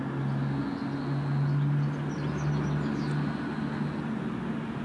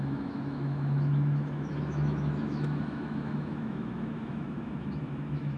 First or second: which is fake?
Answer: second